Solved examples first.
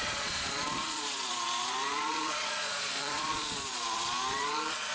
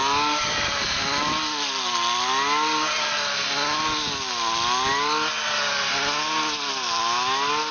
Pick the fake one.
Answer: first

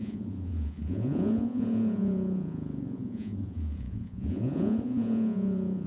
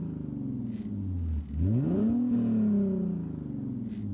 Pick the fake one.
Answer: first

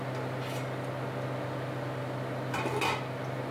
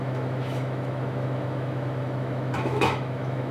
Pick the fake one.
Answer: second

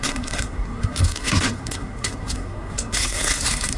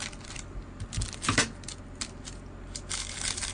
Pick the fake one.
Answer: first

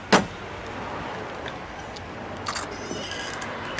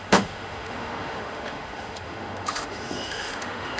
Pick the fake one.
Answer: second